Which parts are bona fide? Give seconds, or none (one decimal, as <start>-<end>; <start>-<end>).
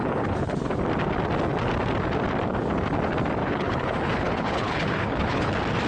0.7-3.4; 5.5-5.9